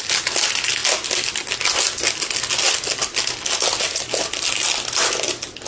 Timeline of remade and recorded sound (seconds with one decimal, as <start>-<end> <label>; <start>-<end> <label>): 0.0-5.7 recorded